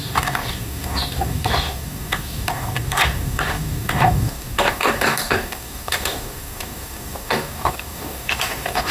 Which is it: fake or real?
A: fake